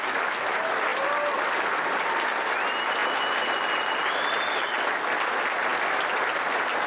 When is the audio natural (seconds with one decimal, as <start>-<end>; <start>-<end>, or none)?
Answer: 0.0-6.9